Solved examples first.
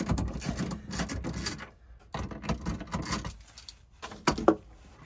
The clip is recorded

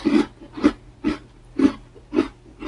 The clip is recorded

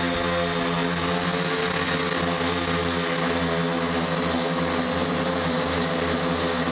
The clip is recorded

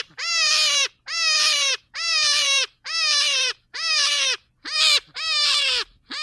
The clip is remade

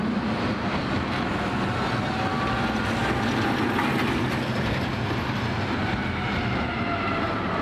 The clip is recorded